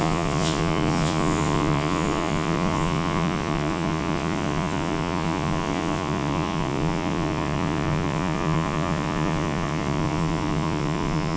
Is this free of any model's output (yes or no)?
no